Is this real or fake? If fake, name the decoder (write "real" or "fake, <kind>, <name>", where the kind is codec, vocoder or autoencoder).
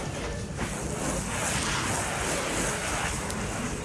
real